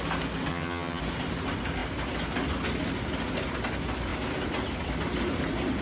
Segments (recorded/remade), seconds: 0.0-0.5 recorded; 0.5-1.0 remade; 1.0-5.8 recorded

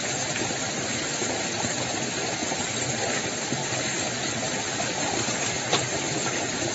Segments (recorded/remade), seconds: 0.0-3.6 recorded; 3.6-4.3 remade; 4.3-6.7 recorded

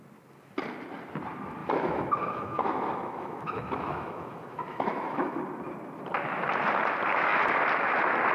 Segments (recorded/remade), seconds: 0.0-1.6 recorded; 1.6-5.4 remade; 5.4-8.3 recorded